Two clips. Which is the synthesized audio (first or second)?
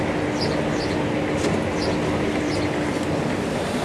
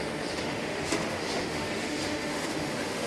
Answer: second